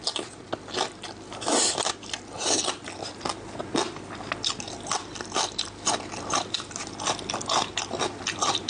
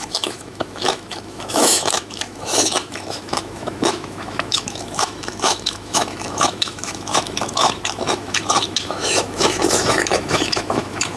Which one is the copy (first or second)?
second